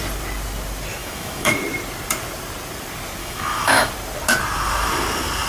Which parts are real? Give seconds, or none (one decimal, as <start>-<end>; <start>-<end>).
0.0-1.0; 1.6-3.2; 3.9-5.5